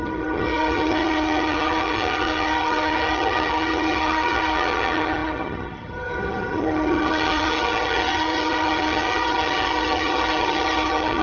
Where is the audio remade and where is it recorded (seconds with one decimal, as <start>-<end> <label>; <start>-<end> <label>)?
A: 0.0-11.2 remade